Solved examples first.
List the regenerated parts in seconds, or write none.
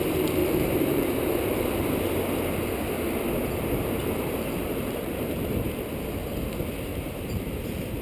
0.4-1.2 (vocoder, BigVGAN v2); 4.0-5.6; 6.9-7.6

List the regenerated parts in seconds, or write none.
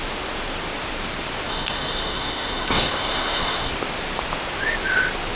1.5-3.7 (codec, SNAC)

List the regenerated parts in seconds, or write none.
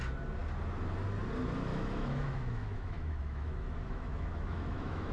1.7-5.1 (autoencoder, DAC-VAE)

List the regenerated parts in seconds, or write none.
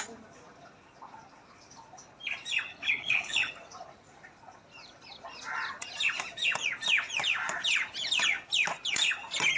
2.7-3.5 (codec, HILCodec)